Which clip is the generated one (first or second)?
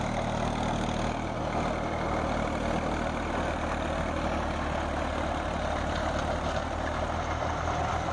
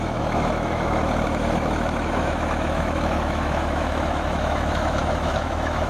second